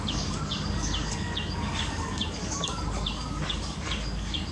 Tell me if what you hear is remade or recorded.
remade